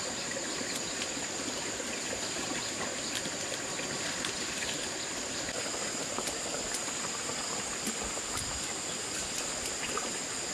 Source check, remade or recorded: recorded